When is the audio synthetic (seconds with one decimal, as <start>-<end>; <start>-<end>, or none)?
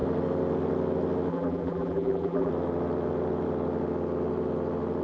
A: 1.3-2.5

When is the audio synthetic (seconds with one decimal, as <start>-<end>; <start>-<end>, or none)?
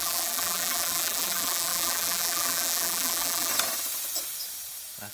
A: 0.0-3.5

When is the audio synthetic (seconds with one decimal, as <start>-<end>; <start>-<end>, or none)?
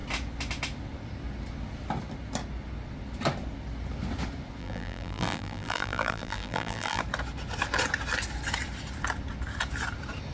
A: 4.6-7.0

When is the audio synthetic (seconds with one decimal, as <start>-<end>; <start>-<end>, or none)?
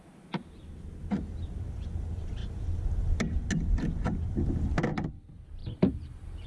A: 5.6-6.5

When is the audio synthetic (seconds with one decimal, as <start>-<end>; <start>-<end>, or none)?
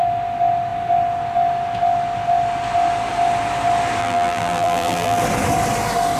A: 4.0-5.2